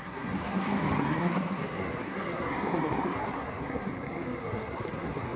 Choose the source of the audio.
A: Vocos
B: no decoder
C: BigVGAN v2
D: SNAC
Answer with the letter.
D